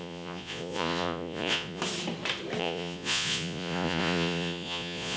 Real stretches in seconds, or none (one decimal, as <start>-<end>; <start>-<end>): 1.8-2.6